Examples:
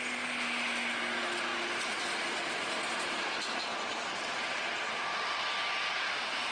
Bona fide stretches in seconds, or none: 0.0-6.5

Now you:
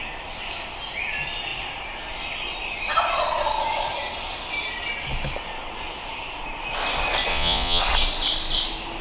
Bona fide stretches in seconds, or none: 0.0-7.3; 7.8-9.0